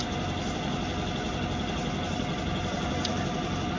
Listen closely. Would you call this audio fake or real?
real